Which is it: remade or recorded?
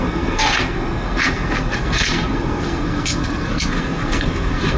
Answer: remade